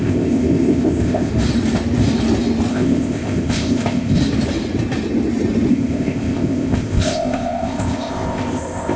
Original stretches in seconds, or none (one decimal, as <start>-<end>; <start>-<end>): 1.3-2.7; 4.2-5.7